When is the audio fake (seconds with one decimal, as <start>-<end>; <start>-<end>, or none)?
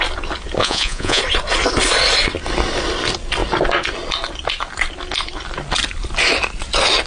0.6-1.2